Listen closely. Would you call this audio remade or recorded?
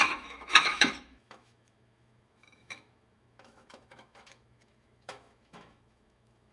remade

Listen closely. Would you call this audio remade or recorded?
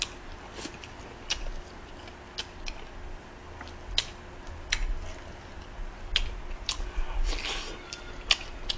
recorded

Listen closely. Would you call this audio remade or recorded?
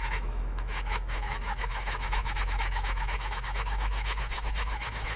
remade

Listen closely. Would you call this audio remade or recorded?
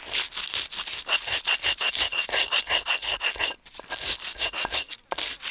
recorded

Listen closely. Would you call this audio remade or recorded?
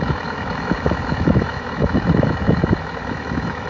remade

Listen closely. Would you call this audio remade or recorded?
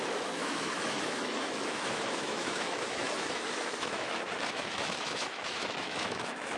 remade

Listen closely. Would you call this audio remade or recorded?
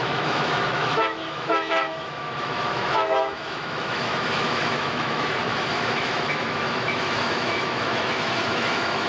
remade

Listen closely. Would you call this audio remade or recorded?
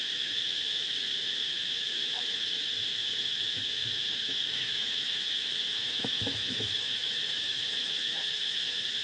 remade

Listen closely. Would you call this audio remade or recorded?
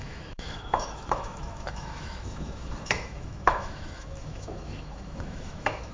remade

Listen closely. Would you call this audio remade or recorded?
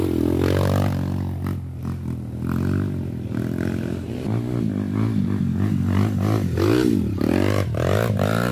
recorded